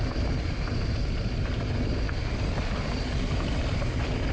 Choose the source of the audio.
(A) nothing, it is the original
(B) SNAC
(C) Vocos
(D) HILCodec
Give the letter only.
A